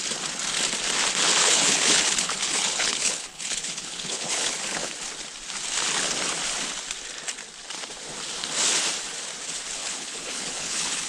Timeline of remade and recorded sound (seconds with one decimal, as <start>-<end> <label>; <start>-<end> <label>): 0.0-1.4 recorded; 1.4-4.9 remade; 4.9-9.8 recorded; 9.8-11.1 remade